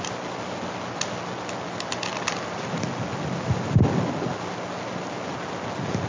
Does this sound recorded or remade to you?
recorded